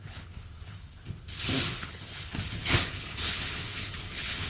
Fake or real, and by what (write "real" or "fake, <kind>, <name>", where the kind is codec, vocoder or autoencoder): fake, codec, HILCodec